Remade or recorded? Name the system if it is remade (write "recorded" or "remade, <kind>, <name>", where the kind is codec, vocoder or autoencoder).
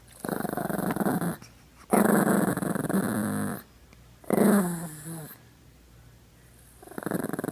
recorded